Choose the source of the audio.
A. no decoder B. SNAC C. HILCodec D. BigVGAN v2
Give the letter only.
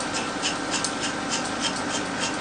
A